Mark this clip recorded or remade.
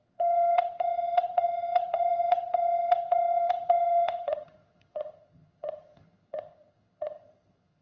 remade